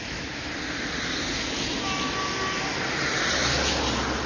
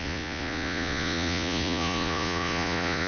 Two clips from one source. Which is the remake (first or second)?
second